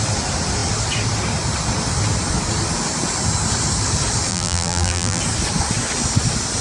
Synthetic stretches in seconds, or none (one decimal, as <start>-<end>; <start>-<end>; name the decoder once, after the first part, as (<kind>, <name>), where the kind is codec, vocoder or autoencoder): 4.3-5.2 (vocoder, BigVGAN v2)